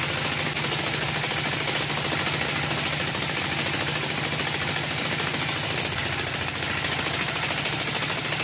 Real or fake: real